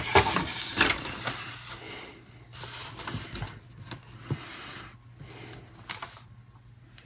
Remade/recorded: recorded